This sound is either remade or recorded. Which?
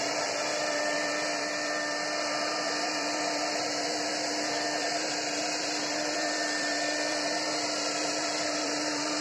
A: remade